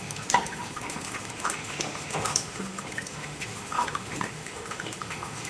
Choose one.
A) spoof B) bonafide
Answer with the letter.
A